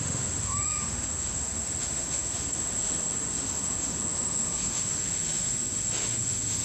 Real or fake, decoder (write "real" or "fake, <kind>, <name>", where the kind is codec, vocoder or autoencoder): fake, autoencoder, DAC-VAE